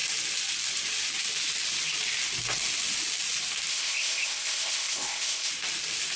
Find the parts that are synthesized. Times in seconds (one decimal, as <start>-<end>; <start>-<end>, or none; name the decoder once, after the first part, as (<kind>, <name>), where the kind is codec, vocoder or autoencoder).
3.7-5.5 (codec, ZipCodec)